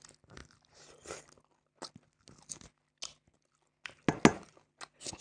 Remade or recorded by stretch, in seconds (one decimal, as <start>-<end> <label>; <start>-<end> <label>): 0.0-5.2 recorded